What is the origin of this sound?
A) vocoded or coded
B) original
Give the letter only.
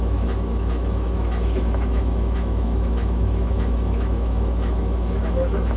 A